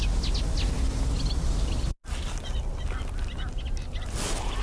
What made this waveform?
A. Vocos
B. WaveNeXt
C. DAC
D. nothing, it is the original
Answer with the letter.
D